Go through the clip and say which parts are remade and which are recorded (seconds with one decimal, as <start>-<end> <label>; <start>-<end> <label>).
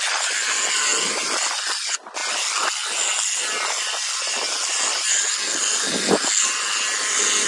0.0-7.5 recorded